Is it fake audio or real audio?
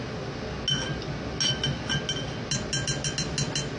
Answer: real